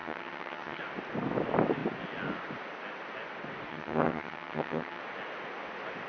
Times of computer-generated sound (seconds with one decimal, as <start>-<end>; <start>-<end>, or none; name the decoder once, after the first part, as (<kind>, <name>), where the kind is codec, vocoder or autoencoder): 0.0-0.8 (vocoder, HiFi-GAN); 3.7-5.0